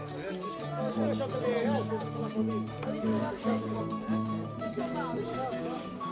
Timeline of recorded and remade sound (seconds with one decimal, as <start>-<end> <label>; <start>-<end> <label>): 0.0-1.6 recorded; 1.6-2.4 remade; 2.4-3.1 recorded; 3.1-3.8 remade; 3.8-5.3 recorded; 5.3-6.1 remade